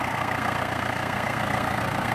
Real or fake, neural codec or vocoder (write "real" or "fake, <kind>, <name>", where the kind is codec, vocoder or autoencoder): fake, codec, SNAC